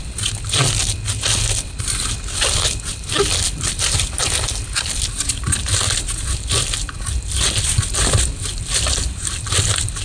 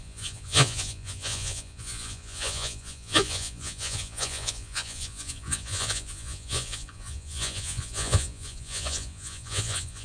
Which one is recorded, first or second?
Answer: first